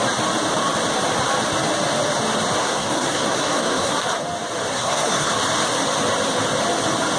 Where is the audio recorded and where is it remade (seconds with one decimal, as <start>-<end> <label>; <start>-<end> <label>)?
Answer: 0.0-2.6 recorded; 2.6-3.9 remade; 3.9-4.7 recorded; 4.7-5.3 remade; 5.3-7.2 recorded